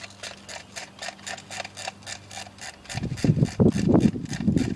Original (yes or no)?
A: yes